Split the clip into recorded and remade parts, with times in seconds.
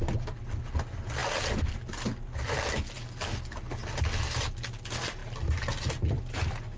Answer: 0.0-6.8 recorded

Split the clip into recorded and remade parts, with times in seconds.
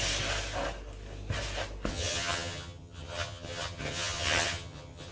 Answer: 0.0-1.9 recorded; 1.9-5.1 remade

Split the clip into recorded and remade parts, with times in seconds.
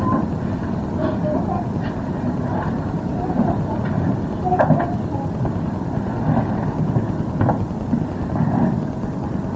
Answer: 0.0-9.6 recorded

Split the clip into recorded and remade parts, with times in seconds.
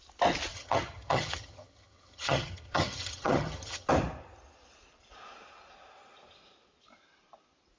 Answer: 0.0-0.5 recorded; 0.5-3.9 remade; 3.9-7.8 recorded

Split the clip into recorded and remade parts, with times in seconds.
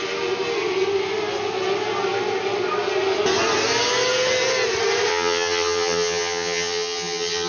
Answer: 0.0-5.1 recorded; 5.1-7.5 remade